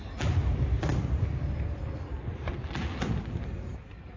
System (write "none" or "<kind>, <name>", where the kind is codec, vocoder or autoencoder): none